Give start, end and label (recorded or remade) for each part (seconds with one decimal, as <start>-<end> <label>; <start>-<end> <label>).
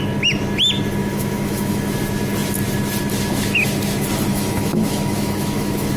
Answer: 0.0-1.0 recorded; 1.0-1.9 remade; 1.9-4.3 recorded; 4.3-6.0 remade